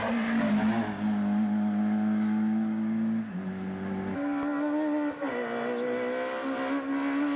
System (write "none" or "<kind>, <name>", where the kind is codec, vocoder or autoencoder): none